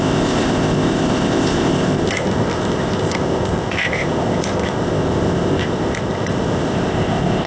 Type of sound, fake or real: fake